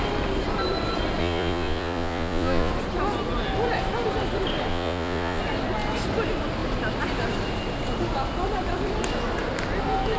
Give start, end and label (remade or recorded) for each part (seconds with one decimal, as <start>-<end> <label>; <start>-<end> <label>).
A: 0.0-1.2 recorded; 1.2-2.7 remade; 2.7-4.7 recorded; 4.7-5.4 remade; 5.4-10.2 recorded

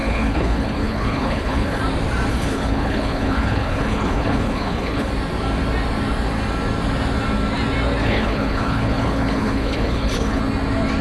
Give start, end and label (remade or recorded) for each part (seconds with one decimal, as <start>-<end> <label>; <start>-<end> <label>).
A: 0.0-1.8 remade; 1.8-2.3 recorded; 2.3-5.1 remade; 5.1-8.0 recorded; 8.0-10.4 remade; 10.4-11.0 recorded

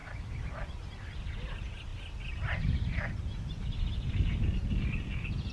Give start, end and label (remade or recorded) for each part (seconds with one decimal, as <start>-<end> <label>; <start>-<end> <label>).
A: 0.0-5.5 recorded

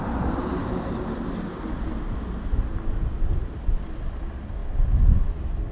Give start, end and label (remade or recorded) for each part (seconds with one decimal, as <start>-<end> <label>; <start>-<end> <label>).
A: 0.0-5.7 recorded

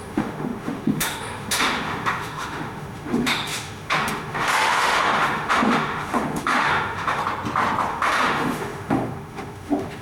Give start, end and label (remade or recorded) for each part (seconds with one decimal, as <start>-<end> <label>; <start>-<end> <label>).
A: 0.0-7.2 remade; 7.2-7.9 recorded; 7.9-10.0 remade

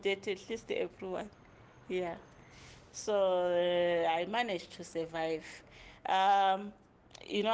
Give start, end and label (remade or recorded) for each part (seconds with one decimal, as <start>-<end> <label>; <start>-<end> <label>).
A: 0.0-1.3 remade; 1.3-5.9 recorded; 5.9-7.0 remade; 7.0-7.5 recorded

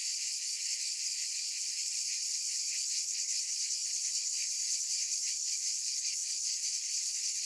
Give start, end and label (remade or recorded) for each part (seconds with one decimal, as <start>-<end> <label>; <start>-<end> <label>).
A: 0.0-7.4 remade

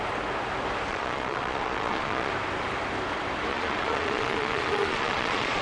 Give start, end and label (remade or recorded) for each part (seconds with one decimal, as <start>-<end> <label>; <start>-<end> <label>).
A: 0.0-0.9 recorded; 0.9-2.3 remade; 2.3-3.5 recorded; 3.5-5.6 remade